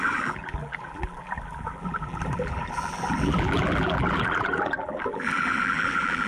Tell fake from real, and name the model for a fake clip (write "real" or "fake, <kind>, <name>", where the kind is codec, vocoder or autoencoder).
fake, vocoder, BigVGAN v2